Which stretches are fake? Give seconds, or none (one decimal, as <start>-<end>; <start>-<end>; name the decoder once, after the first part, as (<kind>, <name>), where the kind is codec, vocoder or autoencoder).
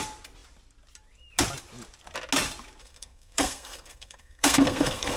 2.8-5.2 (codec, SNAC)